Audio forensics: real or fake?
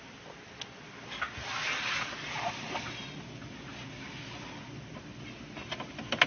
real